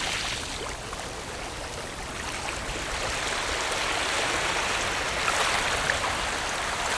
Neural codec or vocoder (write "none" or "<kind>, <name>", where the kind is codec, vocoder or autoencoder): none